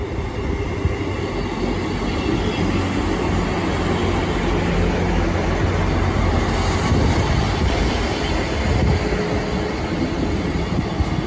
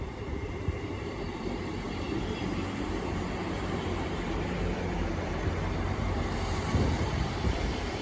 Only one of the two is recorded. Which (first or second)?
first